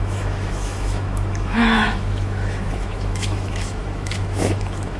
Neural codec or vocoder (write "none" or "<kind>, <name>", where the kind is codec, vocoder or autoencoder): autoencoder, DAC-VAE